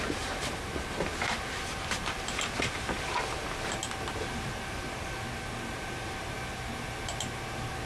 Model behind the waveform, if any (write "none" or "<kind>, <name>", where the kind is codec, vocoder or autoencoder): none